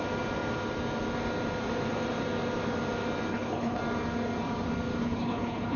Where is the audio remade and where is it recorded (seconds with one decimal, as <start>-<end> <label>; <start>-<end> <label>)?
0.0-3.3 recorded; 3.3-3.8 remade; 3.8-5.0 recorded; 5.0-5.8 remade